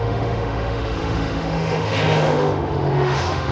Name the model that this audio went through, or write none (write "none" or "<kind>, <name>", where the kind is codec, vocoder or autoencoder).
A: autoencoder, DAC-VAE